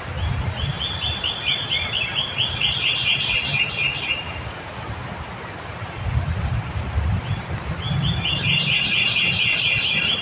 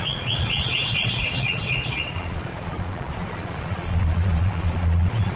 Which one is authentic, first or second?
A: first